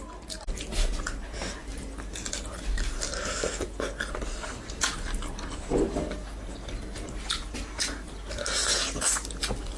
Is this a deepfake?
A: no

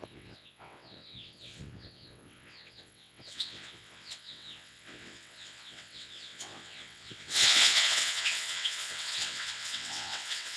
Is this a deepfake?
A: yes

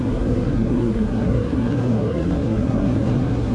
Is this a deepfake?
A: yes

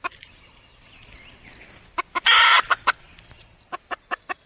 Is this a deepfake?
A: yes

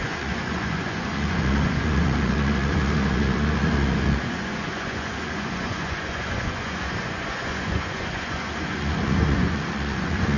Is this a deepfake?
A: yes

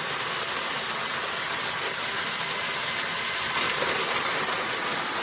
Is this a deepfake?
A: no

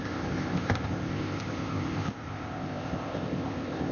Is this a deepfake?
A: yes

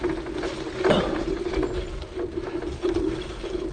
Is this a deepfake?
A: no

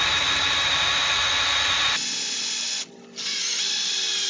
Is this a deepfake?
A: no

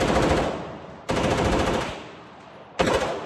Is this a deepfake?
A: no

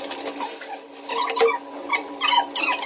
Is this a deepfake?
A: no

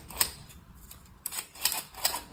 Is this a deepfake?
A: yes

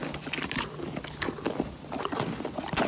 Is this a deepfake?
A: no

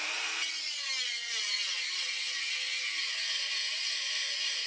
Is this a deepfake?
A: yes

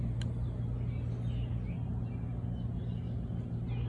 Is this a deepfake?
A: no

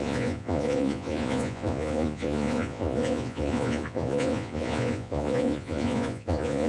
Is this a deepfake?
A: yes